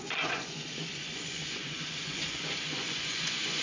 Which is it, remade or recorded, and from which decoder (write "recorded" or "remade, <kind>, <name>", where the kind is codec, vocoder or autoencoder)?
remade, vocoder, Vocos